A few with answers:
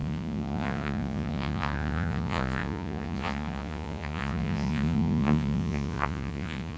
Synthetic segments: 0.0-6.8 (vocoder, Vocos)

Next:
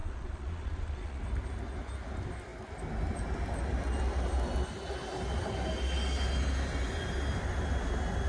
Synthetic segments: 0.0-1.2 (vocoder, Vocos)